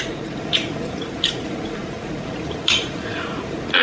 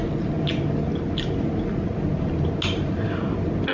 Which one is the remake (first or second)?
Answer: first